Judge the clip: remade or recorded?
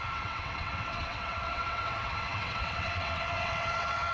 remade